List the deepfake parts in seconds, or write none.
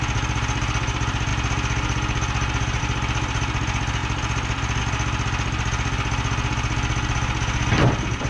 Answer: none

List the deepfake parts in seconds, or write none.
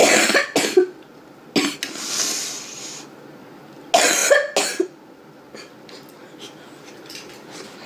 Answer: none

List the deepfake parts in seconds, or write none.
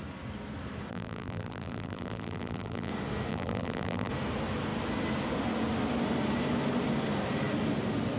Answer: 0.9-2.9 (vocoder, BigVGAN v2); 3.3-4.1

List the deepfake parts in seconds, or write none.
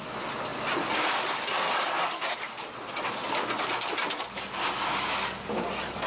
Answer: none